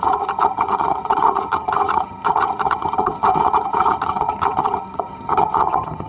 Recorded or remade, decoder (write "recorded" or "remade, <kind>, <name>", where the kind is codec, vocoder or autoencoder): remade, vocoder, HiFi-GAN